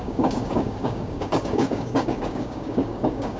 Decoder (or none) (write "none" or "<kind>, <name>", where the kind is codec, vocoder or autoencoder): codec, DAC